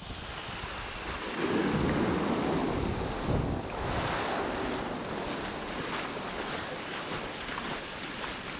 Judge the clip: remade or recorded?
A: recorded